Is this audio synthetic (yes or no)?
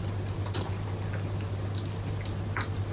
no